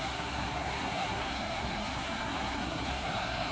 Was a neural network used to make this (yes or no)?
yes